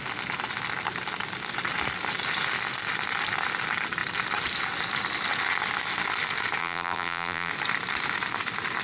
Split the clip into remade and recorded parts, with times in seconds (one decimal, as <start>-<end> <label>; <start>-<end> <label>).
0.0-6.6 recorded; 6.6-7.5 remade; 7.5-8.8 recorded